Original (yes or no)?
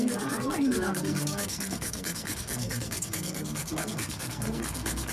no